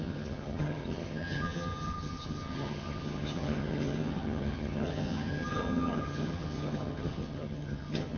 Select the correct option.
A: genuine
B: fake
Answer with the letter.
B